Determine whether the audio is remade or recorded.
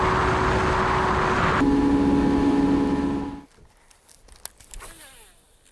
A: recorded